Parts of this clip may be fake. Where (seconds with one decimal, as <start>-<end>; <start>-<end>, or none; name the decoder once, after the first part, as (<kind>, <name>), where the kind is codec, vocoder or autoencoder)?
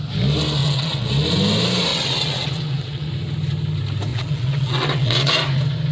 0.6-1.1 (vocoder, WaveNeXt); 1.9-3.1; 4.1-5.3